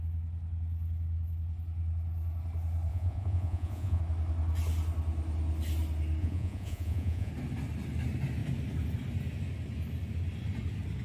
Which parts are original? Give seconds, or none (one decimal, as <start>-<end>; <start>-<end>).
0.0-2.9; 4.0-6.2; 7.3-11.0